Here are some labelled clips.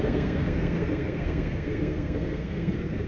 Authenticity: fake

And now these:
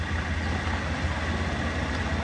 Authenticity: real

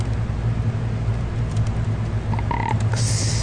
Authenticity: real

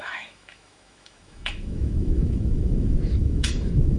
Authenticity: fake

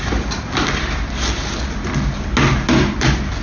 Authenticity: real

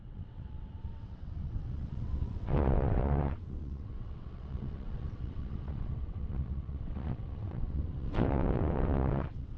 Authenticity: fake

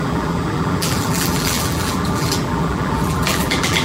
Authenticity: fake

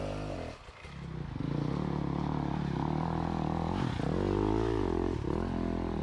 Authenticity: real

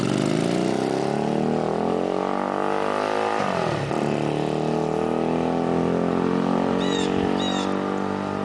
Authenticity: real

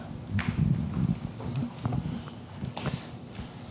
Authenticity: real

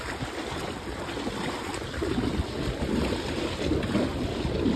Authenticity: real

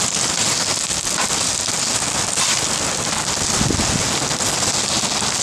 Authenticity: real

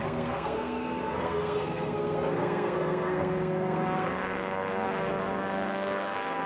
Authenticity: fake